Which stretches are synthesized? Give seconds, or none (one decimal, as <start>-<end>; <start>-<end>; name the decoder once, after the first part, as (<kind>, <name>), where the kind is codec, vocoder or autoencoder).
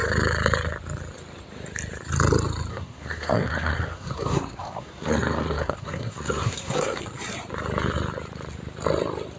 2.7-7.0 (codec, SNAC)